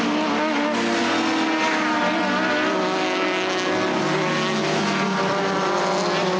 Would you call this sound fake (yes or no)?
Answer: no